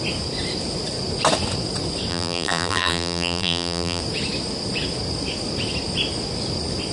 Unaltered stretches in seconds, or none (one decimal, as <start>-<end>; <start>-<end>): 0.0-2.1; 4.0-6.9